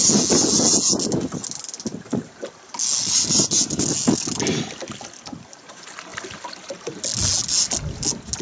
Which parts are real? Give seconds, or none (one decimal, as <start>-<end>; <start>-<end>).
0.0-8.4